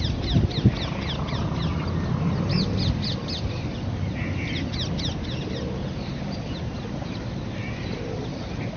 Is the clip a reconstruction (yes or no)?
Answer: no